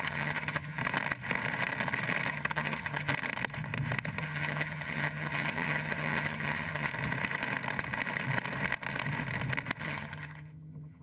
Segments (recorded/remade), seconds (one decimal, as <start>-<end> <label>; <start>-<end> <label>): 0.0-0.8 remade; 0.8-2.3 recorded; 2.3-3.1 remade; 3.1-4.2 recorded; 4.2-6.9 remade; 6.9-9.8 recorded; 9.8-11.0 remade